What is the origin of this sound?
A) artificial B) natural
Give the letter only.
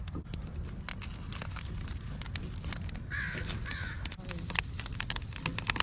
B